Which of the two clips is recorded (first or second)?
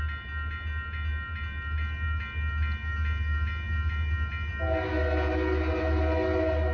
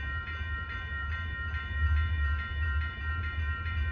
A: first